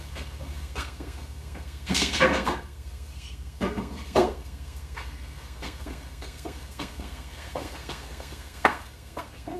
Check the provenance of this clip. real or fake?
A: fake